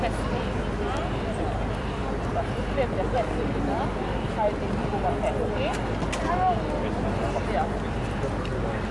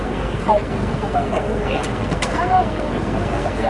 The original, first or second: first